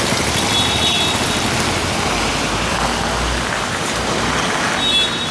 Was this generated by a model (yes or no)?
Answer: no